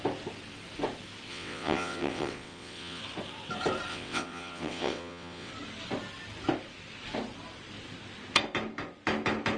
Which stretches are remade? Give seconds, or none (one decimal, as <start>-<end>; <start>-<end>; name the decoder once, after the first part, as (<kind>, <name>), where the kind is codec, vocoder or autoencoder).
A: 1.3-3.0 (vocoder, WaveNeXt); 3.9-5.5